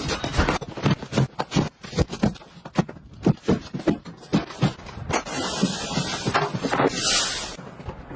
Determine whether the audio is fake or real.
real